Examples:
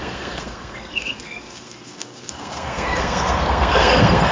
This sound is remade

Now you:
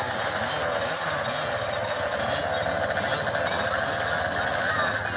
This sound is recorded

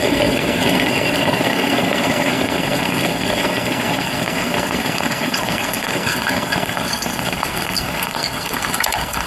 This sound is remade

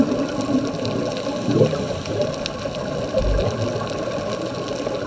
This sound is recorded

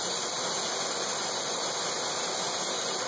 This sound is recorded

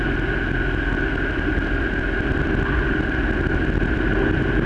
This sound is recorded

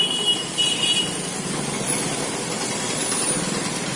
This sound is recorded